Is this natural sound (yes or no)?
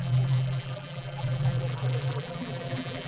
no